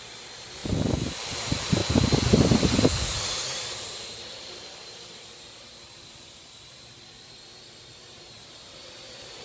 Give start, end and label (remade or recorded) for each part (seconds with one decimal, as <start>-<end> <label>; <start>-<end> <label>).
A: 0.0-0.6 remade; 0.6-1.3 recorded; 1.3-1.8 remade; 1.8-2.3 recorded; 2.3-9.4 remade

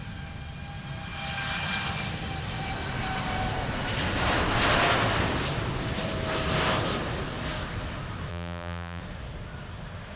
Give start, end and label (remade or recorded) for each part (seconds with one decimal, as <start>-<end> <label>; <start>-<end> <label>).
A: 0.0-8.3 recorded; 8.3-9.0 remade; 9.0-10.2 recorded

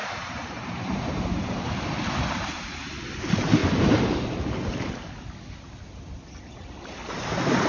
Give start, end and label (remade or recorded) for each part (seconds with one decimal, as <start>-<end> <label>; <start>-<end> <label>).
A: 0.0-2.9 remade; 2.9-7.7 recorded

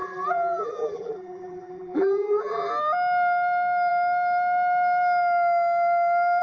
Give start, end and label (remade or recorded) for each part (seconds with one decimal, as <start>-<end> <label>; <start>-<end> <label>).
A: 0.0-2.7 remade; 2.7-6.4 recorded

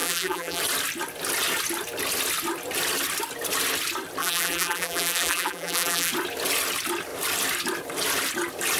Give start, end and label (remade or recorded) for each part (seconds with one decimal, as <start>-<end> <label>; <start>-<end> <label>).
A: 0.0-0.6 remade; 0.6-4.2 recorded; 4.2-6.1 remade; 6.1-8.8 recorded

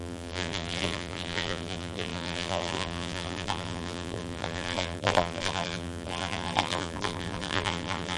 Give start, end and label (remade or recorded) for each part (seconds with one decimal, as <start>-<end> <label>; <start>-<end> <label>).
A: 0.0-8.2 remade

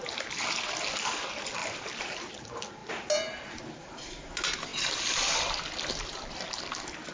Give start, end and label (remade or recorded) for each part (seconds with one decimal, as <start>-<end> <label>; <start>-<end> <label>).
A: 0.0-1.6 recorded; 1.6-2.3 remade; 2.3-7.1 recorded